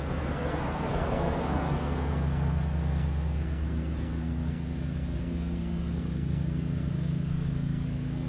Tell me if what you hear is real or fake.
fake